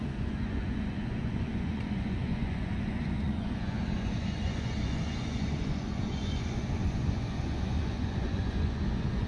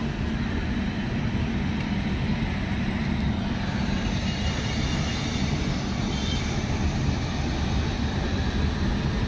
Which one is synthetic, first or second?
first